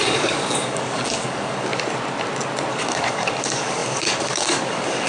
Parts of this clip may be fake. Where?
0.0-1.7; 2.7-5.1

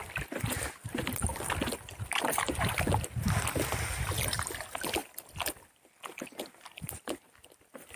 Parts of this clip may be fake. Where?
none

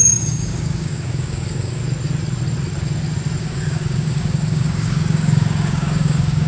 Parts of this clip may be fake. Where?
0.0-1.8; 3.4-6.5

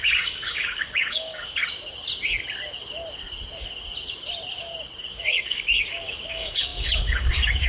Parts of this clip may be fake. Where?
0.0-1.6; 5.1-7.7